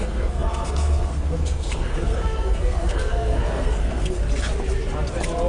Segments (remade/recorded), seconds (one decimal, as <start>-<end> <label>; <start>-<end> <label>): 0.0-4.2 remade; 4.2-5.5 recorded